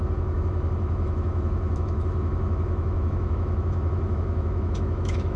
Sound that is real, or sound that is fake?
fake